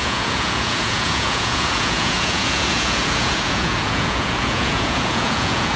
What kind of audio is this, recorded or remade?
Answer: remade